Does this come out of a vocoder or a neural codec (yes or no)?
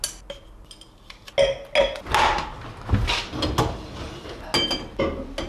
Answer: no